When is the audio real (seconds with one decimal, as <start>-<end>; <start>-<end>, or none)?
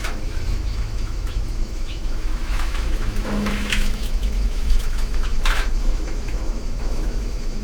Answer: none